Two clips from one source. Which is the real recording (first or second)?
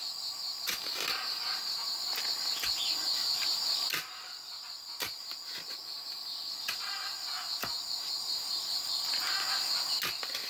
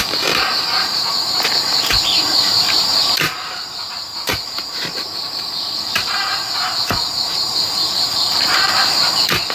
first